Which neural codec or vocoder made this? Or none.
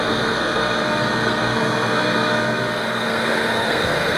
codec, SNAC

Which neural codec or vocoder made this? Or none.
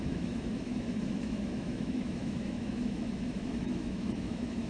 autoencoder, DAC-VAE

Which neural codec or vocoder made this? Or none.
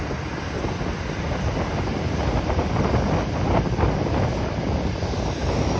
none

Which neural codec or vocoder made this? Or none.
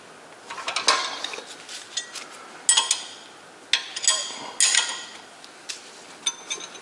none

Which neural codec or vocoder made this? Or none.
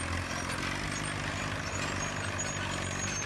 none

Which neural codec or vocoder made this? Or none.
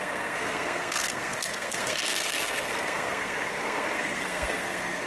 codec, SNAC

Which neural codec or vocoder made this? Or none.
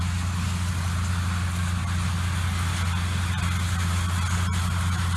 none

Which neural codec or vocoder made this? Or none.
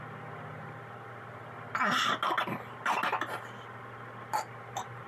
none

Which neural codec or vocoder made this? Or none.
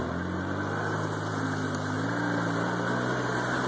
none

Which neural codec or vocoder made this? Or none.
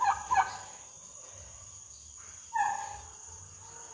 none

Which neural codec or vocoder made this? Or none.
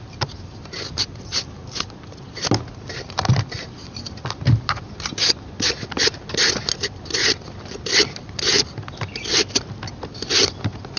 none